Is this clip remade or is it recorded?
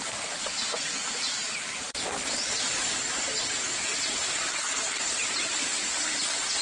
recorded